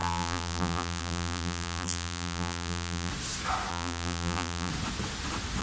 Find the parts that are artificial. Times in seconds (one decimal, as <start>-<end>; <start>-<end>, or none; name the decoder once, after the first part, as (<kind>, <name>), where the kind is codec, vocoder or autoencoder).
0.0-3.1 (vocoder, BigVGAN v2); 3.7-4.7